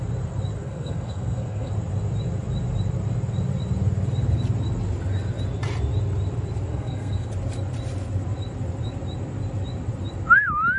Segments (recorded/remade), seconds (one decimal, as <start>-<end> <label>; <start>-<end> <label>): 0.0-0.6 recorded; 0.6-1.7 remade; 1.7-6.7 recorded; 6.7-7.3 remade; 7.3-10.8 recorded